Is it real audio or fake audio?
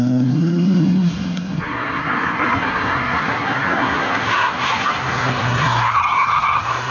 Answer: fake